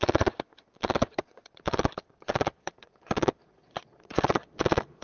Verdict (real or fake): fake